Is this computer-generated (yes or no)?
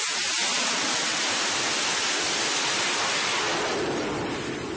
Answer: no